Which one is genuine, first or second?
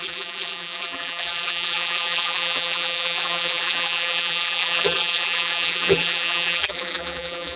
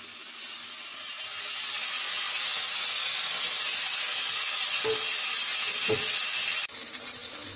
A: second